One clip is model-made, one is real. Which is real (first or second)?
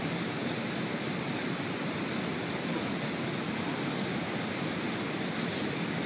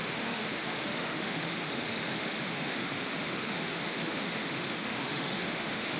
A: first